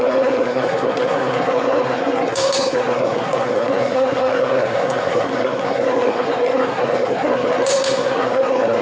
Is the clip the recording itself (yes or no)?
no